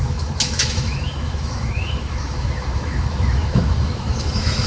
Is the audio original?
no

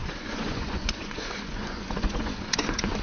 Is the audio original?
no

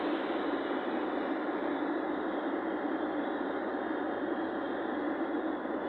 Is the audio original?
yes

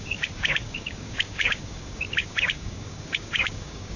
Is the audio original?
no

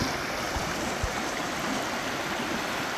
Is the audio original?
yes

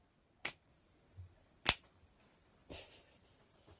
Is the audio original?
yes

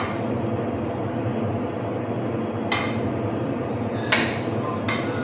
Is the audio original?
yes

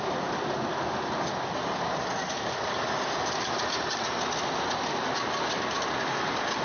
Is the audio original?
yes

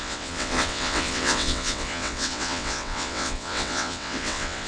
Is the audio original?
no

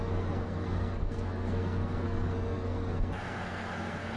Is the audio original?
no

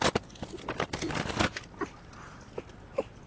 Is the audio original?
yes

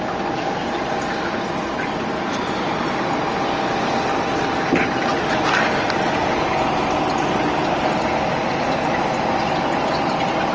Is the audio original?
yes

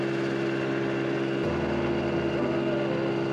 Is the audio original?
yes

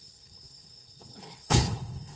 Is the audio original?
no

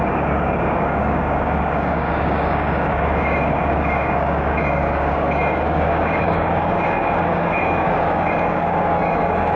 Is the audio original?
no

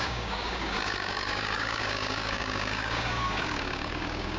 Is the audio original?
no